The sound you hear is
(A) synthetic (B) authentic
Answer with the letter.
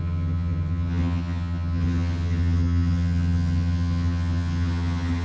A